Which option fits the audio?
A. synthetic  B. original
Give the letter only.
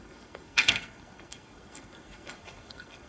A